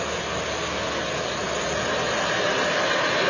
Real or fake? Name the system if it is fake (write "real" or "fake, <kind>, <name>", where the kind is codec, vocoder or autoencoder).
real